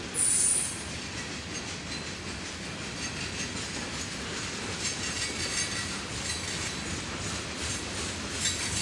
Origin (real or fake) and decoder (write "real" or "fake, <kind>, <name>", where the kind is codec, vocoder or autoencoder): real